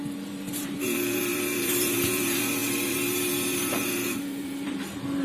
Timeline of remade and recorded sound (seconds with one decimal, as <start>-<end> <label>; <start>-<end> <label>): 0.0-5.2 remade